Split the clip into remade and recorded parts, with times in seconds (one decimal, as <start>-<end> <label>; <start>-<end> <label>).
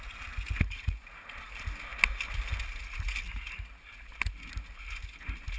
0.0-5.6 recorded